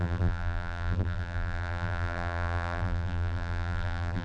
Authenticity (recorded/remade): remade